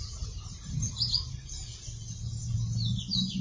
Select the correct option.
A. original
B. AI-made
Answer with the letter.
A